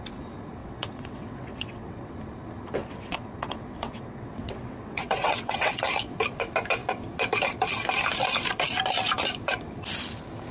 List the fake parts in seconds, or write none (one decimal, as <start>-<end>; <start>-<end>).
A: 0.6-2.1; 2.8-5.8